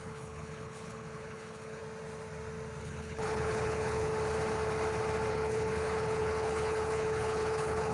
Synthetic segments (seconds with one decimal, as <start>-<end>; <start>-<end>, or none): 0.0-1.8; 2.8-4.1; 5.3-7.9